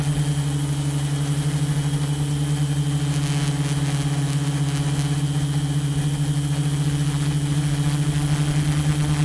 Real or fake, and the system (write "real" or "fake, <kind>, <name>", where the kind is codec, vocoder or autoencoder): real